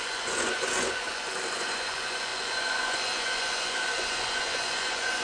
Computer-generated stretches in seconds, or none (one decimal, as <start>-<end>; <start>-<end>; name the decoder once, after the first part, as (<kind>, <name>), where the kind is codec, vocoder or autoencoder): 0.0-5.2 (vocoder, Vocos)